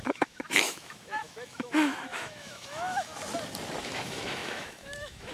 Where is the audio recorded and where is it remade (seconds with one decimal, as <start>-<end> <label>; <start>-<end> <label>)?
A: 0.0-3.1 remade; 3.1-3.8 recorded; 3.8-5.3 remade